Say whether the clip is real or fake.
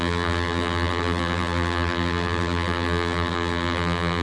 fake